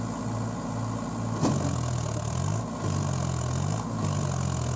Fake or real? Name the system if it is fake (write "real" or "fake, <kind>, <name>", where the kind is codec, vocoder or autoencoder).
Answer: real